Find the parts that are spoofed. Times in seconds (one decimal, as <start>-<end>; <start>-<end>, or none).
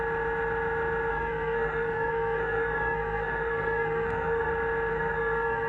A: 1.1-4.5; 4.9-5.7